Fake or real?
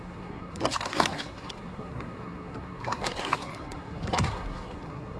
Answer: fake